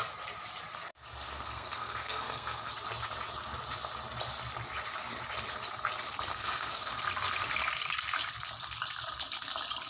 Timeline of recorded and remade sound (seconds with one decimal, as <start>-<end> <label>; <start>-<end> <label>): 0.0-0.9 recorded; 0.9-2.7 remade; 2.7-6.3 recorded; 6.3-6.9 remade; 6.9-9.9 recorded